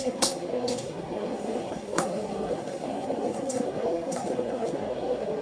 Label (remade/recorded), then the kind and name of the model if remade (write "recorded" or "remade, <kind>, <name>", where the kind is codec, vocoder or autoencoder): remade, codec, SNAC